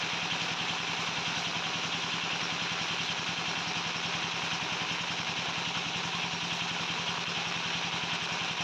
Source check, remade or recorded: recorded